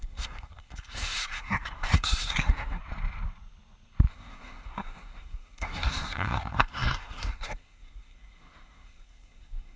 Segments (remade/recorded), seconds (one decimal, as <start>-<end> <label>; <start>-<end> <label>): 0.0-2.8 remade; 2.8-4.1 recorded; 4.1-9.8 remade